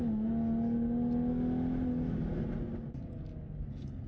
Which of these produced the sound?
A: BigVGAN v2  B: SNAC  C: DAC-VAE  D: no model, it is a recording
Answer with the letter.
D